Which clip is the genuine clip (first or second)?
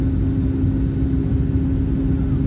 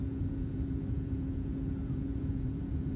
first